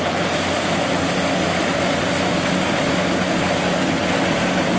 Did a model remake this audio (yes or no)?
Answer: no